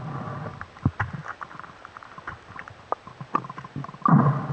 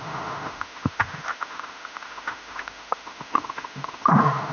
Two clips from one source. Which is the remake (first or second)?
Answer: second